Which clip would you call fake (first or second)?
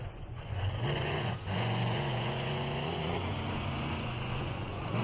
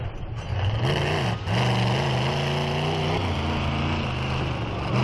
first